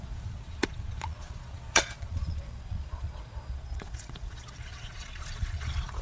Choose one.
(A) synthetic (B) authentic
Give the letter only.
A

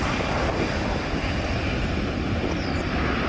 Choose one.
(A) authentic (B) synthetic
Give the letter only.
A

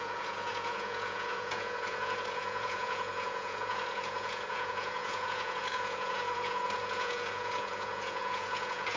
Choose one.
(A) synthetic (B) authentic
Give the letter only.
A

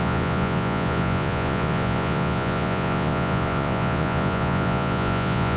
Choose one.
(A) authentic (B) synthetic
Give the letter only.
B